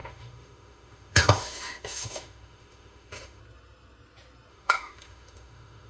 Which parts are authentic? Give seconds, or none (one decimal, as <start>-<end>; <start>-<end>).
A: 3.4-4.5